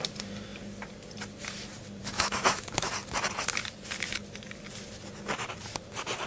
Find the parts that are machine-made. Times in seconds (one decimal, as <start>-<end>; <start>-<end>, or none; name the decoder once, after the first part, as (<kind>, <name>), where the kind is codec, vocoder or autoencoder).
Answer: 2.0-2.9 (autoencoder, DAC-VAE)